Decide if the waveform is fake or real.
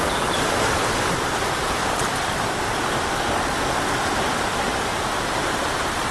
real